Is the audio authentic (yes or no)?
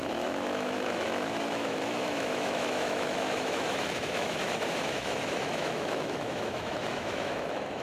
no